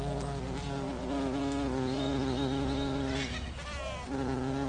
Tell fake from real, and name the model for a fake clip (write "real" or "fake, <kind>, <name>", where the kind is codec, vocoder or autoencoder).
real